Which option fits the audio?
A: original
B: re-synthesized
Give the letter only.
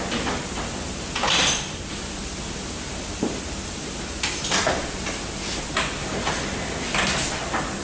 A